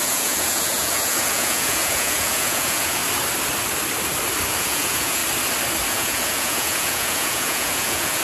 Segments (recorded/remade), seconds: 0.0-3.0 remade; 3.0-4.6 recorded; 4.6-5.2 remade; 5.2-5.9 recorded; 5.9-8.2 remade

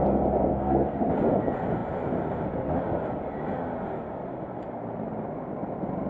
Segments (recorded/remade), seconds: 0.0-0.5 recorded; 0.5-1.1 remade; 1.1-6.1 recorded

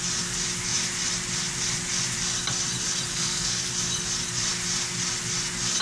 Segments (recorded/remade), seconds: 0.0-3.1 recorded; 3.1-3.7 remade; 3.7-5.8 recorded